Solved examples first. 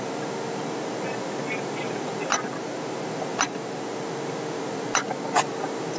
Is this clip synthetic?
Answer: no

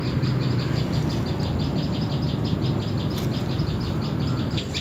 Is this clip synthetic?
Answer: no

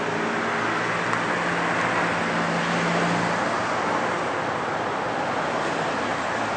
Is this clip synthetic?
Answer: no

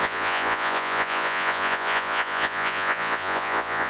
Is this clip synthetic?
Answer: yes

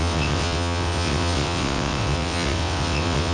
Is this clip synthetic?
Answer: yes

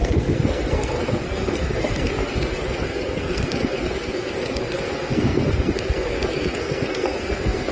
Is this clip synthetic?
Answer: yes